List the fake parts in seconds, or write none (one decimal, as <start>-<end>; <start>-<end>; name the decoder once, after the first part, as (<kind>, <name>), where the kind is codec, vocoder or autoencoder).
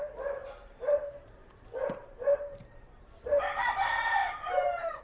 0.4-3.4 (vocoder, BigVGAN v2); 4.2-5.0